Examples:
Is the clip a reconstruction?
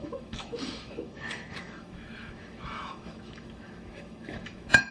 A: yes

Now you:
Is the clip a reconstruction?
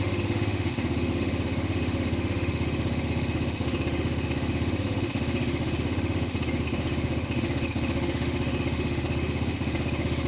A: yes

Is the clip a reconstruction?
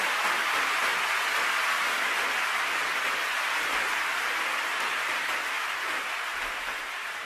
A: no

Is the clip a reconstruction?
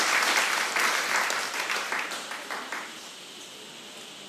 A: no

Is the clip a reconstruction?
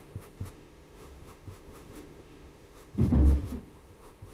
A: yes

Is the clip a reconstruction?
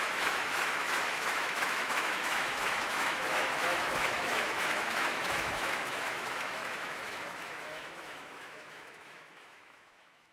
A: yes